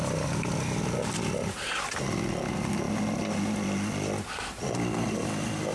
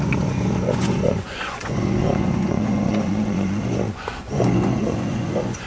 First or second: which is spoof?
second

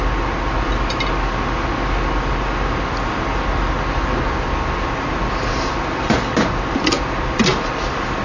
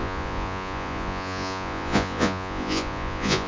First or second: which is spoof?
second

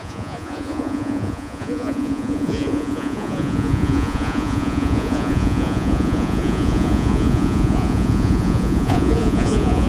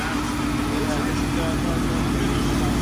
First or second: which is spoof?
first